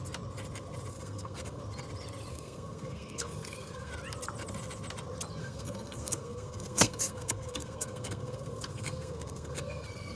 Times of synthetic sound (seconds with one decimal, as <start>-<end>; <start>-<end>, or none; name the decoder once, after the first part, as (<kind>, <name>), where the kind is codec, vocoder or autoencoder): 0.9-1.6 (codec, SNAC); 2.3-3.9; 5.4-10.2